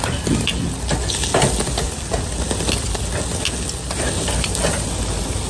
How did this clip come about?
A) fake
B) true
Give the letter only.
B